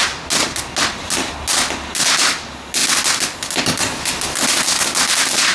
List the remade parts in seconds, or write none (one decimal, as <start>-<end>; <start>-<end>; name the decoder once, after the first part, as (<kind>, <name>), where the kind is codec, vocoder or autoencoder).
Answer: none